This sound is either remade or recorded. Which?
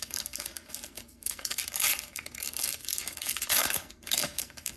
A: remade